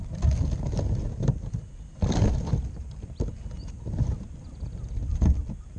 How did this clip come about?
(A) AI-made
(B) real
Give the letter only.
B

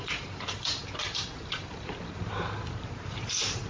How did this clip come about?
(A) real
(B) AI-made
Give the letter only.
B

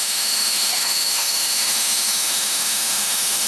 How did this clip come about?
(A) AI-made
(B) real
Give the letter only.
A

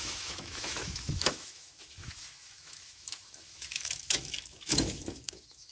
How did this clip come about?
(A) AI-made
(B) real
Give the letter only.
A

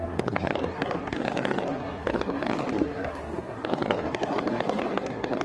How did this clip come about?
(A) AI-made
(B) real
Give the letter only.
A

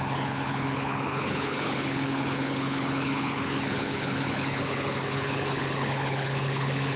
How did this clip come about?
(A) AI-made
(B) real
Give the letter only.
A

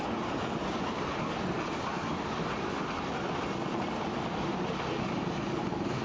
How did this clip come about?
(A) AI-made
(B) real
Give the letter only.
B